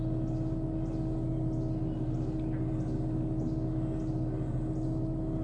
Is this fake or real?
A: real